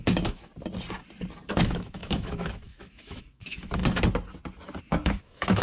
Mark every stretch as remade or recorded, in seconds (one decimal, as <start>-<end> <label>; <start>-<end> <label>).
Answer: 0.0-0.5 remade; 0.5-1.5 recorded; 1.5-3.8 remade; 3.8-4.8 recorded; 4.8-5.6 remade